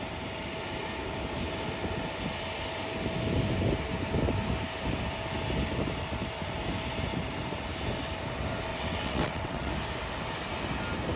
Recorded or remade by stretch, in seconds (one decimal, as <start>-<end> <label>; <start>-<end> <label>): 0.0-8.7 recorded; 8.7-9.7 remade; 9.7-11.2 recorded